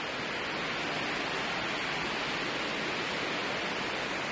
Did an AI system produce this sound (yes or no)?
no